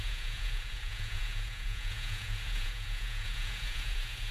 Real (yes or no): no